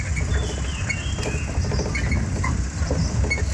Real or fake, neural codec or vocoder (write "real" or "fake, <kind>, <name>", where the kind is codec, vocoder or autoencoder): real